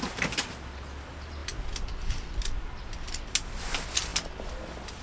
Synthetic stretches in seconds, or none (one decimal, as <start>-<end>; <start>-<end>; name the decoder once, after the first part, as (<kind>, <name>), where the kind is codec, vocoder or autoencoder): none